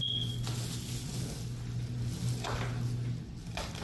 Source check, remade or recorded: recorded